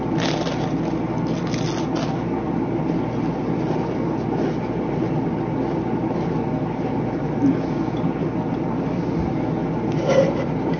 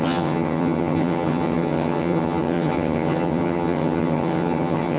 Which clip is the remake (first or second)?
second